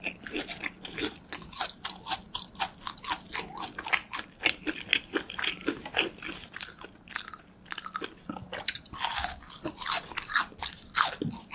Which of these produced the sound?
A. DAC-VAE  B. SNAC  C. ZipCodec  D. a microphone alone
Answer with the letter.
D